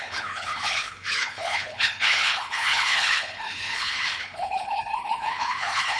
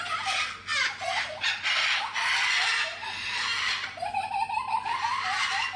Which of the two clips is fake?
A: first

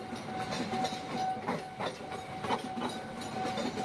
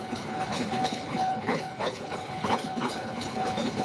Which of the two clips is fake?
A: second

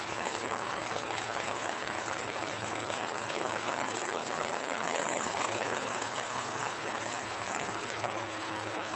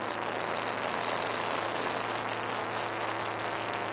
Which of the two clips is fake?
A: first